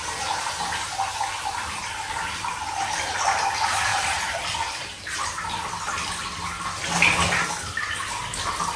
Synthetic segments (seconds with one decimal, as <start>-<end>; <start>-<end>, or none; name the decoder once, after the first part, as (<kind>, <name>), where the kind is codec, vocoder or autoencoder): 3.9-5.2 (vocoder, BigVGAN v2)